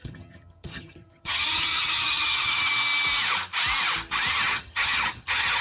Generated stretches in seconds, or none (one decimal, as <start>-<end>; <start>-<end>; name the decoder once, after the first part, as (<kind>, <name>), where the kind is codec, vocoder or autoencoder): 0.0-2.7 (vocoder, HiFi-GAN); 4.3-5.6